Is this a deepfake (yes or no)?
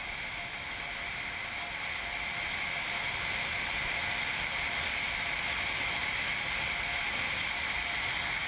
no